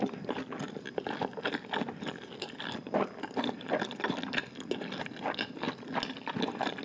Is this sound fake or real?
real